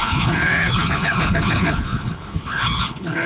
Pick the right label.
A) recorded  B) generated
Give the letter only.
B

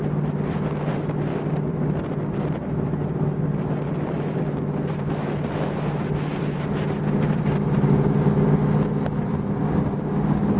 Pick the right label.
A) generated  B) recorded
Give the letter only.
B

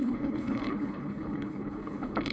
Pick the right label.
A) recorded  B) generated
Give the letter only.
B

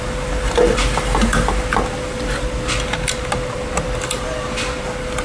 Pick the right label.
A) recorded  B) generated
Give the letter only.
A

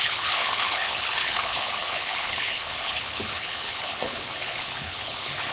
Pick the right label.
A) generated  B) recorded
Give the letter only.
A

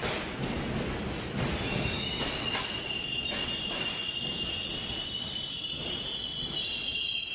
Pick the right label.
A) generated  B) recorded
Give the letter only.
B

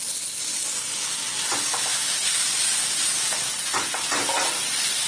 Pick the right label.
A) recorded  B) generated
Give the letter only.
A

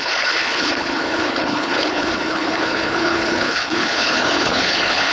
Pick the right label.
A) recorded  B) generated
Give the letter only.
B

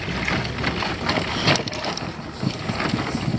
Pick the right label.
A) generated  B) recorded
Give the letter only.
B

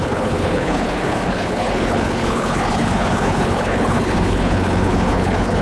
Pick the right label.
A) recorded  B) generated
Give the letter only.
B